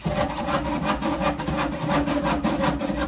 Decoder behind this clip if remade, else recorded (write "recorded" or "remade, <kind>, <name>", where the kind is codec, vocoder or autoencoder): recorded